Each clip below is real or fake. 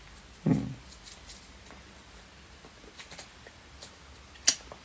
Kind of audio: real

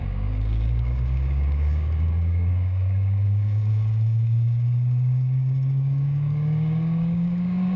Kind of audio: fake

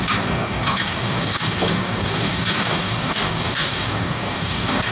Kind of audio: fake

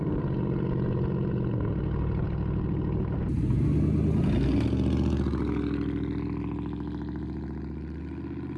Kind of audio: real